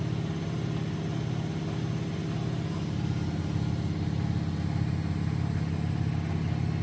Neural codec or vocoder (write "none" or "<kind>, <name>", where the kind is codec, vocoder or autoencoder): none